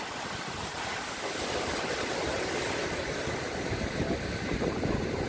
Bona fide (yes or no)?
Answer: yes